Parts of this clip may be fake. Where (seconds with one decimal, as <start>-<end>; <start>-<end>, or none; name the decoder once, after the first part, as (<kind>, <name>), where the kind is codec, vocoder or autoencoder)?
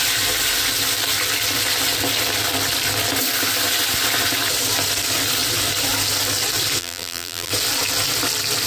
6.8-7.5 (vocoder, BigVGAN v2)